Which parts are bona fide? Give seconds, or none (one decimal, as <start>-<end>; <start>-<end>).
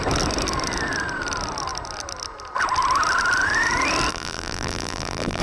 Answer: 0.0-4.1